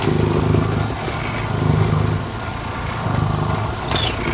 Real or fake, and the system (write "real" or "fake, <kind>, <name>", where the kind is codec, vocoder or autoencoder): real